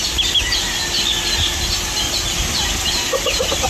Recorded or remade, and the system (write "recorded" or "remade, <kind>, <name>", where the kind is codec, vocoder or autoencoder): recorded